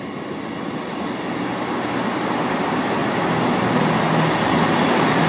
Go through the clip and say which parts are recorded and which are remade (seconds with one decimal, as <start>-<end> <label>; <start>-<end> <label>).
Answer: 0.0-5.3 recorded